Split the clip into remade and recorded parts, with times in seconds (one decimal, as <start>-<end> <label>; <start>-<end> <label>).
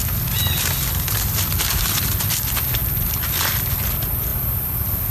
0.0-5.1 recorded